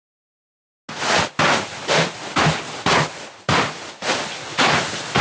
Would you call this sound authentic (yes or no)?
yes